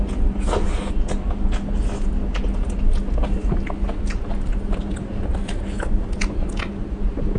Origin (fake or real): real